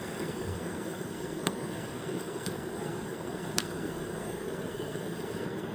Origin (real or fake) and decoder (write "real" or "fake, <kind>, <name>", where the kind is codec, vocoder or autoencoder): fake, codec, SNAC